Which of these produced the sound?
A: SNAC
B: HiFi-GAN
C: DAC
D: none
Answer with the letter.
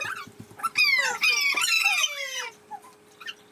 D